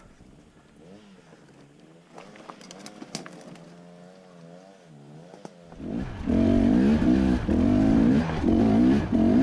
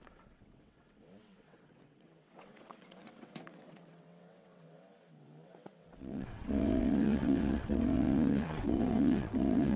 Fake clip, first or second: second